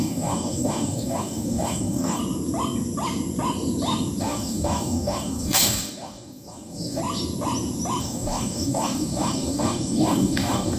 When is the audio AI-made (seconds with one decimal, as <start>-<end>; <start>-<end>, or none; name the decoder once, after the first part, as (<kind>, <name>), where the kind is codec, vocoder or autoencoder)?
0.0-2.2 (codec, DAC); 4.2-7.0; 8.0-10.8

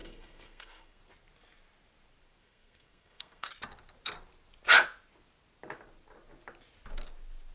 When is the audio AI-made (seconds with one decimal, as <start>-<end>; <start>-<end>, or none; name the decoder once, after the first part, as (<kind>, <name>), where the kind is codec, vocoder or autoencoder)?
0.0-1.0 (codec, SNAC); 2.4-3.5

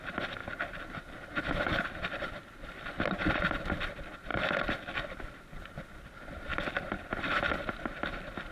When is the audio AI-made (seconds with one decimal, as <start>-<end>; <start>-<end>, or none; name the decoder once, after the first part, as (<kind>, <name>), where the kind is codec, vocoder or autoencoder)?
none

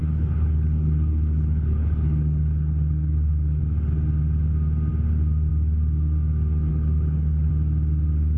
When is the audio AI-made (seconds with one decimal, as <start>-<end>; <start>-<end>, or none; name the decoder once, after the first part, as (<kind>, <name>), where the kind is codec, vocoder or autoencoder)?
0.0-3.6 (codec, HILCodec); 6.7-7.5

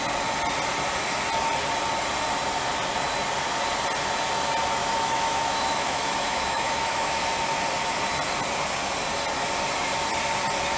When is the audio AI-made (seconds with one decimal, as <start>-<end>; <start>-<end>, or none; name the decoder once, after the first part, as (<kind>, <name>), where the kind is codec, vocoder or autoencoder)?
4.8-7.2 (autoencoder, DAC-VAE)

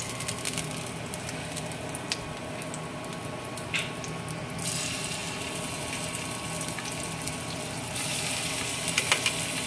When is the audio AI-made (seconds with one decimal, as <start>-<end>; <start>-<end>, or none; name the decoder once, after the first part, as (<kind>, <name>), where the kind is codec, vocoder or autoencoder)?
none